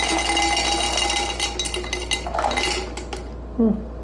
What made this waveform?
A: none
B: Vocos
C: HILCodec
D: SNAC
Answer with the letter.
A